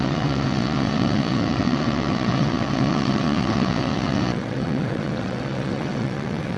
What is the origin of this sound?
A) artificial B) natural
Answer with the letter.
A